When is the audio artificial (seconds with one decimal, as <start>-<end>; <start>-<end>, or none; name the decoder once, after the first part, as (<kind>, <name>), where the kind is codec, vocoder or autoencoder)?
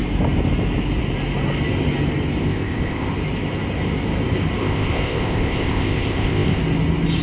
2.4-3.1 (codec, ZipCodec); 4.6-6.6